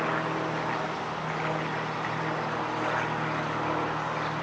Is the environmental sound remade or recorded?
recorded